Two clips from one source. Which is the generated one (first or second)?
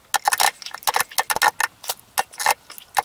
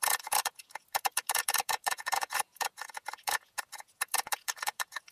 second